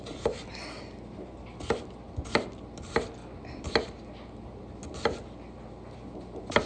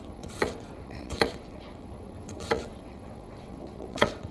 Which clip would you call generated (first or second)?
second